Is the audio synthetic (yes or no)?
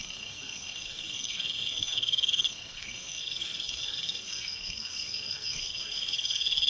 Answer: yes